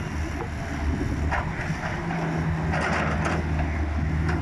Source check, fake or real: real